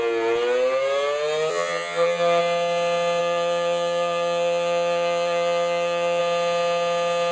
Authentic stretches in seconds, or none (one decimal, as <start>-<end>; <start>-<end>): 0.0-1.5; 2.4-3.2; 6.2-7.3